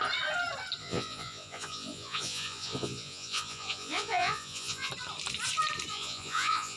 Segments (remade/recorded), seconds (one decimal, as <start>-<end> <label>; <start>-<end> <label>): 0.0-0.8 recorded; 0.8-4.9 remade; 4.9-5.9 recorded; 5.9-6.8 remade